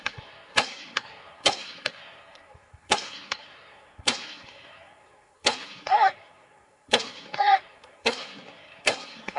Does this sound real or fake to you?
fake